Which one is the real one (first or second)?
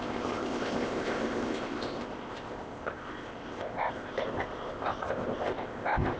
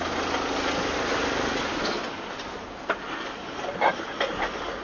second